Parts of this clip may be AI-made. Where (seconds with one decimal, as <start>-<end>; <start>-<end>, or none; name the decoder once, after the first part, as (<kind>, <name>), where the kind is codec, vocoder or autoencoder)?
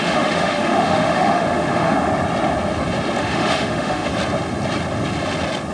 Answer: 0.0-2.1 (autoencoder, DAC-VAE); 3.2-4.1